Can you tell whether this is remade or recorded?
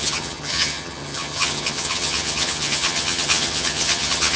remade